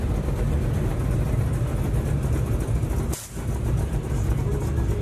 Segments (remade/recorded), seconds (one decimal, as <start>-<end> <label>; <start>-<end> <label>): 0.0-5.0 recorded